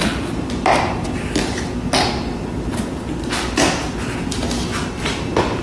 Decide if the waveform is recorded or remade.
recorded